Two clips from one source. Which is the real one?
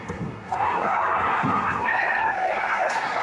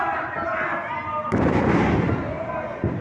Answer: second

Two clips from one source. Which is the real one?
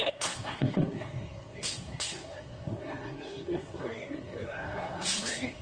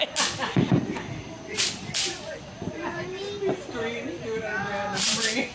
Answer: second